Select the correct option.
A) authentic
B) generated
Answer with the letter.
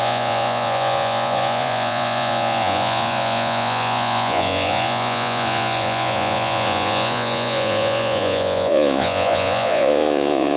B